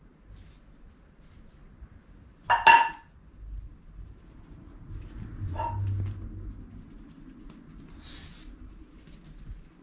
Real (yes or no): yes